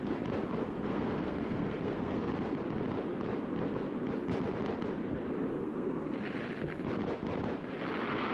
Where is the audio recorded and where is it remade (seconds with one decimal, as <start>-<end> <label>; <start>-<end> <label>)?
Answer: 0.0-0.6 recorded; 0.6-2.3 remade; 2.3-5.5 recorded; 5.5-6.2 remade; 6.2-8.3 recorded